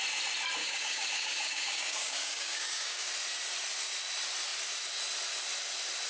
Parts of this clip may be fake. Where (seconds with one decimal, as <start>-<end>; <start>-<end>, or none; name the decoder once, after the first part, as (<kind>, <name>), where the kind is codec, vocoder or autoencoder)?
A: 0.6-3.1 (codec, DAC)